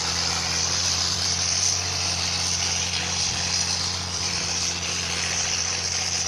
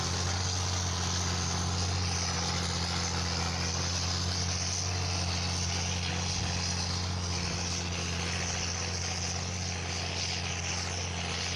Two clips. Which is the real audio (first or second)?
second